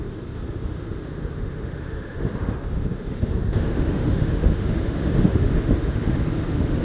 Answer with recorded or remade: remade